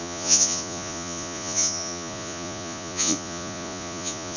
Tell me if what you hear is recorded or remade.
remade